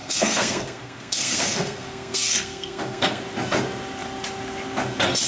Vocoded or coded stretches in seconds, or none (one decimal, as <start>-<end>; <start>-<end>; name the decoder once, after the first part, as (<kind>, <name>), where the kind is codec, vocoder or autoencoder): 0.0-3.2 (codec, SNAC)